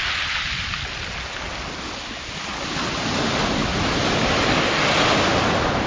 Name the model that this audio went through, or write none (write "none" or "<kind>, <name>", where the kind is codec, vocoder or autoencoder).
none